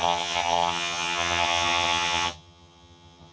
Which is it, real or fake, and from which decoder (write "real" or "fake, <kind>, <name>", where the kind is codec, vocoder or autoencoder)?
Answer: fake, vocoder, HiFi-GAN